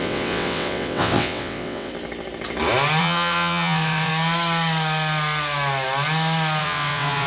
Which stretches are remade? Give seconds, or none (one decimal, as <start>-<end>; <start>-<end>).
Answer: 0.0-1.9; 3.0-4.1; 6.6-7.3